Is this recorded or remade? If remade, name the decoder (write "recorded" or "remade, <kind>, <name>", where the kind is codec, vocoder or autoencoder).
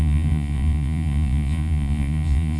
remade, vocoder, Vocos